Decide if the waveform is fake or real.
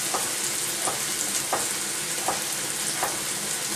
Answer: real